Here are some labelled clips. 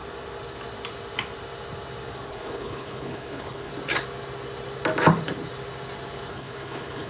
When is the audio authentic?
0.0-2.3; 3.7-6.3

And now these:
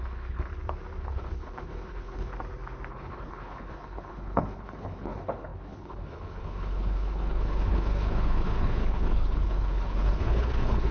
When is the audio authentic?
0.5-1.0; 2.3-2.9

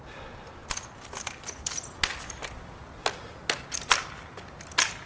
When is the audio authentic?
0.0-5.1

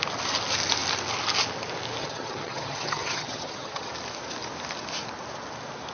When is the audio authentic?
0.0-2.0; 3.9-5.9

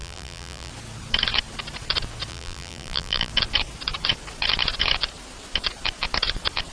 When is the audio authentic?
0.7-2.3; 3.3-6.7

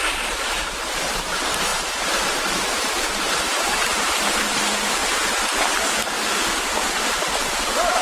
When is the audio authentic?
5.0-6.6

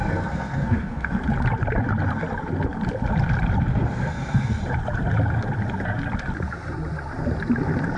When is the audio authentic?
1.2-3.7; 4.6-8.0